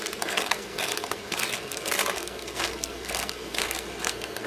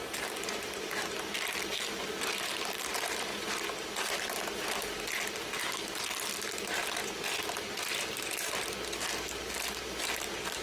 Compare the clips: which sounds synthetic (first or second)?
first